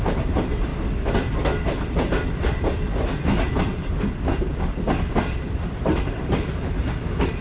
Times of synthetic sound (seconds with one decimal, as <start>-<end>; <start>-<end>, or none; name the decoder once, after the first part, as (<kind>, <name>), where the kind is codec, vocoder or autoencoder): 0.0-0.7 (vocoder, BigVGAN v2); 5.1-7.4